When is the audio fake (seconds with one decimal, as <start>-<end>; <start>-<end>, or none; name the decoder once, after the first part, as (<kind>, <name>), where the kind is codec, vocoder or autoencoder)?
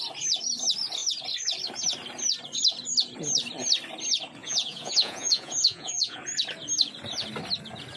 4.4-6.2 (vocoder, Vocos)